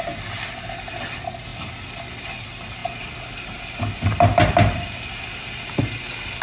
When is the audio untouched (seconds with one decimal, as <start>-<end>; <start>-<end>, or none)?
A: 0.0-6.4

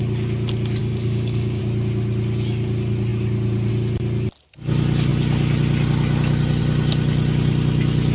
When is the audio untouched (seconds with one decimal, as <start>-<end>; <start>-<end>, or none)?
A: 0.0-0.8; 1.6-8.1

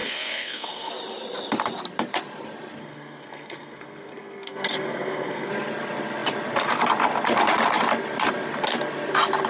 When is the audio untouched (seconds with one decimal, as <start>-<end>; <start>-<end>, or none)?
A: 0.9-2.8; 5.5-9.5

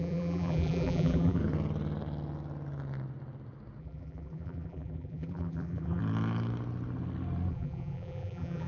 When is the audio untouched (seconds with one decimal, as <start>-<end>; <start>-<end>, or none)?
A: 1.4-3.8; 6.0-7.5

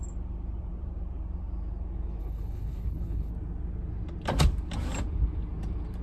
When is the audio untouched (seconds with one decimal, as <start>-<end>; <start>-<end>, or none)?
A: 0.0-2.2; 3.3-6.0